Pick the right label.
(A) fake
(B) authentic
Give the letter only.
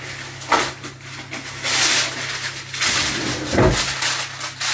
B